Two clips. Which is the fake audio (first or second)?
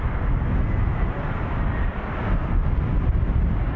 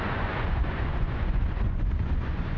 second